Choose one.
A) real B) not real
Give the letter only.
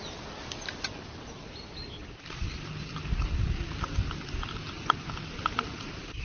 A